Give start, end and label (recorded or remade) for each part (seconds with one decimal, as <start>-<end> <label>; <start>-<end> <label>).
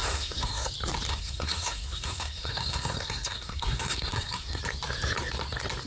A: 0.0-0.7 remade; 0.7-1.1 recorded; 1.1-4.6 remade; 4.6-5.9 recorded